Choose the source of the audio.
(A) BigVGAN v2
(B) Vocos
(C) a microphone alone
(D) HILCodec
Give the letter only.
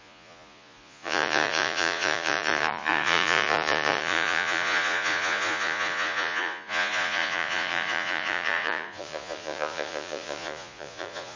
B